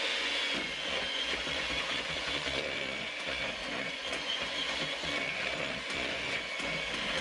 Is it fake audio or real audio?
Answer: fake